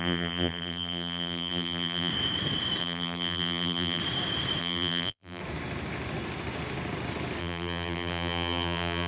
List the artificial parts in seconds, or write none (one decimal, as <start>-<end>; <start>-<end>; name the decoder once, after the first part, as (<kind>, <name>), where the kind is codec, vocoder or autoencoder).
0.0-2.1 (vocoder, BigVGAN v2); 2.8-4.0; 4.6-5.4; 7.4-9.1